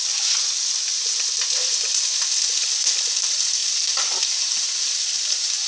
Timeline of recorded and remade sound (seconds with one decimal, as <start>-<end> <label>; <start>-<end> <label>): 0.0-5.7 recorded